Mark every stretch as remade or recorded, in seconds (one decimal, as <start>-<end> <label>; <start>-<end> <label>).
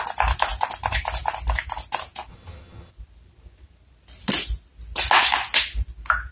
0.0-2.3 recorded; 2.3-2.9 remade; 2.9-6.3 recorded